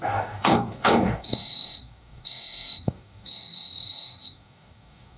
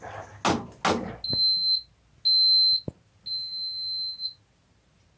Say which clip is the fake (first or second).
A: first